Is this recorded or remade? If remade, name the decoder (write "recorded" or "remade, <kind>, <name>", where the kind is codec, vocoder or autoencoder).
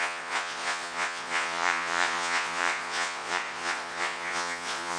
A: remade, vocoder, Vocos